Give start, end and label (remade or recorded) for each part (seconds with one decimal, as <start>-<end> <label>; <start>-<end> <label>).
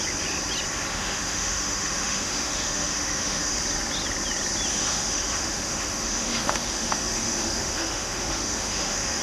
0.0-0.9 recorded; 0.9-3.6 remade; 3.6-4.7 recorded; 4.7-9.2 remade